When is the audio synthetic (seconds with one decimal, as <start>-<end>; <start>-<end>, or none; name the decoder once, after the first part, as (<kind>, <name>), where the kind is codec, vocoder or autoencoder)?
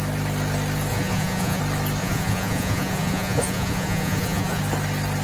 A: 0.9-1.6 (vocoder, Vocos); 2.0-4.6